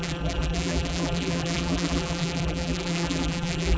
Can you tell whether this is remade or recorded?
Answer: remade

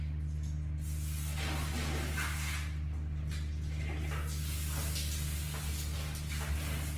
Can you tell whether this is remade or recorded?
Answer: recorded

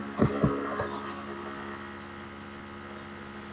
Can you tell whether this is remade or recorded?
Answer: recorded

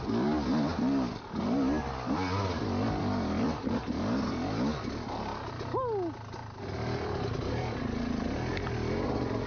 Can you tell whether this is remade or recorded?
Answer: recorded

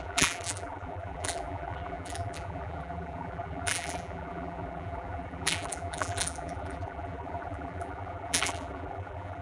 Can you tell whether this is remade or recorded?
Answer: remade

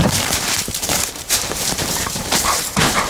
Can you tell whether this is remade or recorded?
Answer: remade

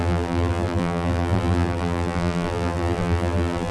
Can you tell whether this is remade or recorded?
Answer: remade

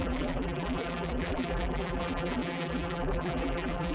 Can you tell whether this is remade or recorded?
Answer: remade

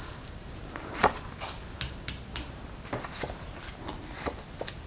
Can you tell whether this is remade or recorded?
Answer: recorded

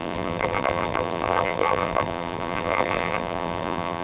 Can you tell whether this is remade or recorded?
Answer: remade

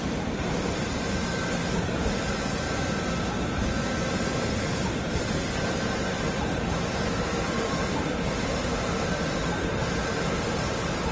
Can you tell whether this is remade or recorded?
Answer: remade